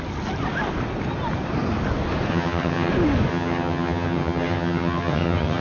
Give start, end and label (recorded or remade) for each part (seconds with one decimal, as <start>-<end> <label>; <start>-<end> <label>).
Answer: 0.0-2.3 recorded; 2.3-2.9 remade; 2.9-3.3 recorded; 3.3-5.6 remade